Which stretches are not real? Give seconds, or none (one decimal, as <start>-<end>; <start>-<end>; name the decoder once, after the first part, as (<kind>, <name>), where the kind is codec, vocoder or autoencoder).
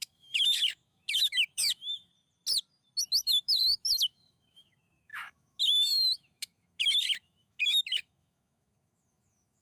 0.0-2.1 (autoencoder, DAC-VAE); 3.0-9.6